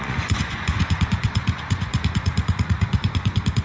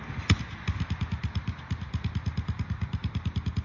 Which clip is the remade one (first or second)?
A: first